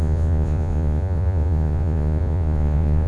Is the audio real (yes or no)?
no